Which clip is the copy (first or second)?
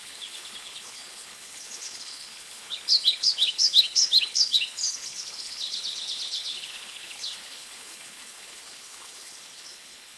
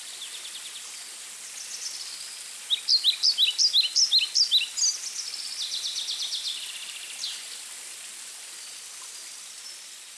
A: first